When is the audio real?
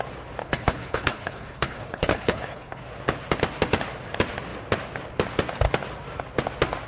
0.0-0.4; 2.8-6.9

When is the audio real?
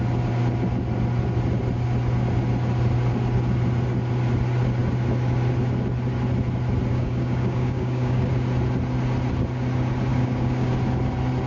0.0-6.9; 8.3-10.1; 10.7-11.5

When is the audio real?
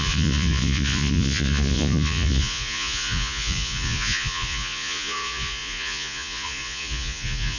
none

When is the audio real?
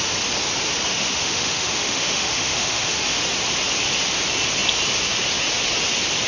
0.0-0.9; 3.2-6.3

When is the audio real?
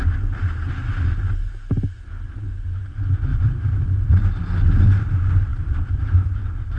0.0-3.3; 4.1-6.8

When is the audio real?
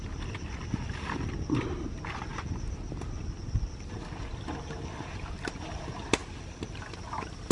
0.0-7.5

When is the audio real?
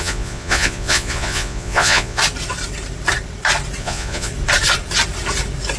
2.2-3.8; 4.3-5.8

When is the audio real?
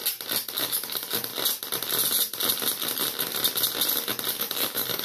0.0-0.6; 1.3-4.3